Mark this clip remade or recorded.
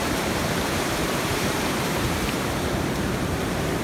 remade